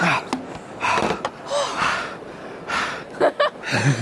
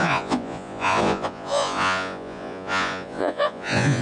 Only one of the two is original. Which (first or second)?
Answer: first